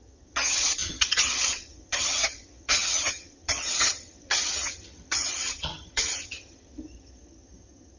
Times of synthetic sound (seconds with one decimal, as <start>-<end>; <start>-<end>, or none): 0.0-8.0